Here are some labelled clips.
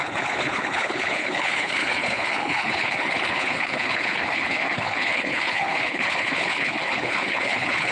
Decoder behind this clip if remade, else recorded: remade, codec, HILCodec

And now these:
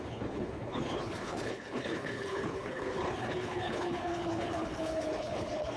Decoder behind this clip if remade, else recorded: remade, codec, HILCodec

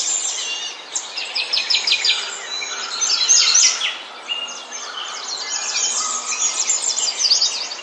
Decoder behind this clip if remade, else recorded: recorded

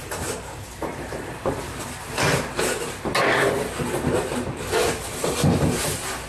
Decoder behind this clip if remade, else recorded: recorded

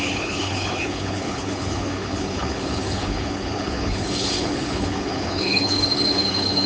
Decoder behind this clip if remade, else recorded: remade, codec, HILCodec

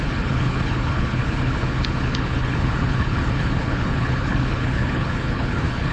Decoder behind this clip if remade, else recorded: remade, codec, HILCodec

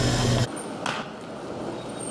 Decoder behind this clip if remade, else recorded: recorded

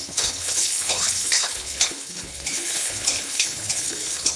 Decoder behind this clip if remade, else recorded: remade, codec, HILCodec